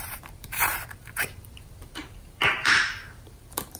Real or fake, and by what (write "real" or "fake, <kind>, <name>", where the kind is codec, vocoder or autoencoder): fake, vocoder, BigVGAN v2